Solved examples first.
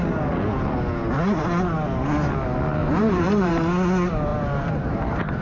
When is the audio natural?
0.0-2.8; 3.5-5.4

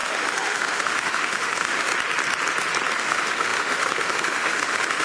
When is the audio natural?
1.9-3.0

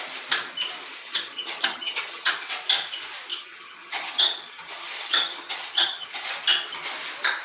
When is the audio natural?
0.0-1.0; 2.3-3.3; 6.3-7.4